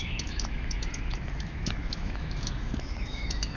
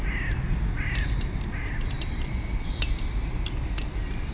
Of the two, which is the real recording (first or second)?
second